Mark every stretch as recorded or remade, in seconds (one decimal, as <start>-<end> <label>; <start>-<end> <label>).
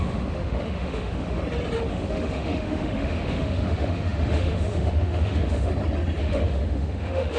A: 0.0-1.4 remade; 1.4-1.9 recorded; 1.9-5.7 remade; 5.7-6.2 recorded; 6.2-7.4 remade